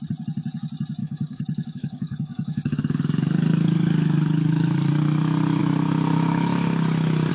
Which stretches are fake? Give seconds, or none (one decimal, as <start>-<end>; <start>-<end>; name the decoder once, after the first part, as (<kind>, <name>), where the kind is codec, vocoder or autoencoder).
1.0-4.9 (codec, DAC); 5.6-7.3

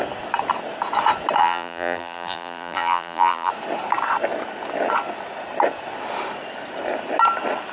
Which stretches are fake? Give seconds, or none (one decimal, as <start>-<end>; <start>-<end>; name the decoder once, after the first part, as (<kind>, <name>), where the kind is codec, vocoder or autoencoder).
1.4-3.5 (vocoder, BigVGAN v2)

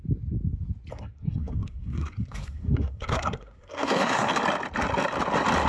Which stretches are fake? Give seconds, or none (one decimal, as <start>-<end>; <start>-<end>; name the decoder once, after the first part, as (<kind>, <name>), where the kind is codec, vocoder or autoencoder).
0.9-4.3 (codec, SNAC)

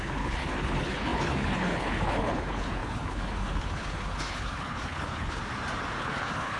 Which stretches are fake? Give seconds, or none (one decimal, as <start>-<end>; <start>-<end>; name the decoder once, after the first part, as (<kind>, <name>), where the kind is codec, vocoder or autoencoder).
0.0-5.4 (codec, HILCodec); 6.0-6.6

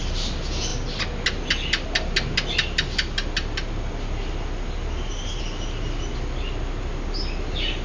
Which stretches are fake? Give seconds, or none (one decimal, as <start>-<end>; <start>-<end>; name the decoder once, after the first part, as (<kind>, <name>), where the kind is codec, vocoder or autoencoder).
none

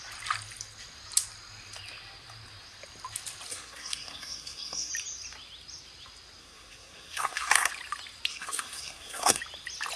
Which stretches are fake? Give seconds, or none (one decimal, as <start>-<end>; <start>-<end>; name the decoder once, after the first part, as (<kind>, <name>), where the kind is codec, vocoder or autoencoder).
3.5-4.9 (codec, SNAC); 6.4-7.7; 8.3-9.4